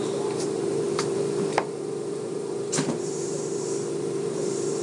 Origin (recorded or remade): remade